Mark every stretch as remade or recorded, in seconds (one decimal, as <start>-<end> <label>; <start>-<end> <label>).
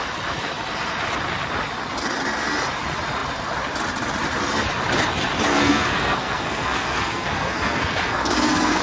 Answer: 0.0-5.5 recorded; 5.5-8.8 remade